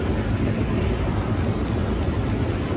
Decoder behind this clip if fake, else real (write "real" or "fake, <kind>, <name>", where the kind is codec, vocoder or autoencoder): real